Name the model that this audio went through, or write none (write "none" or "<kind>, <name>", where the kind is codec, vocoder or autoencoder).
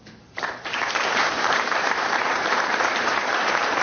vocoder, BigVGAN v2